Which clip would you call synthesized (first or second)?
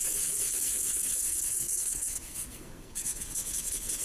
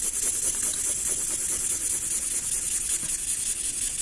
first